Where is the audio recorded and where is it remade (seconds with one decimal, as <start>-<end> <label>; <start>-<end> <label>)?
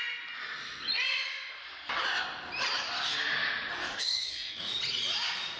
0.0-3.8 recorded; 3.8-4.7 remade; 4.7-5.6 recorded